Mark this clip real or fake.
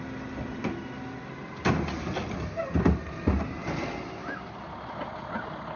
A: real